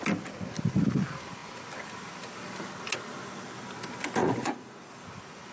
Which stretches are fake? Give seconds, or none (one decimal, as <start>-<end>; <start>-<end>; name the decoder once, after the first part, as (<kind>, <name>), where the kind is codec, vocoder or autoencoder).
4.2-4.9 (vocoder, Vocos)